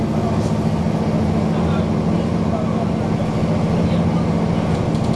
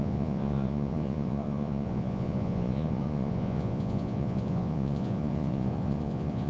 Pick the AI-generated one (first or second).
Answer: second